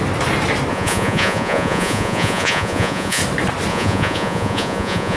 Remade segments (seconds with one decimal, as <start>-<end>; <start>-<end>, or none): 0.7-3.2; 3.7-5.2